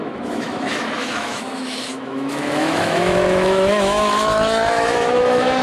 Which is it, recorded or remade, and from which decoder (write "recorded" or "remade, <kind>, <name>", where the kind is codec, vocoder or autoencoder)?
remade, autoencoder, DAC-VAE